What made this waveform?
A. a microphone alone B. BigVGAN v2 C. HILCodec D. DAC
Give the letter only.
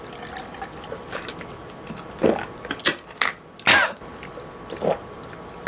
A